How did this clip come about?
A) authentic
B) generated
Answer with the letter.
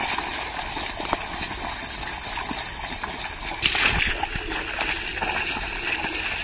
A